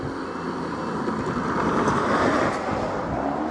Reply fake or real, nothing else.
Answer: real